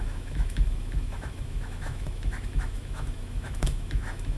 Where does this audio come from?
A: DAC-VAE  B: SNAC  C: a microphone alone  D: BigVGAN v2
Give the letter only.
A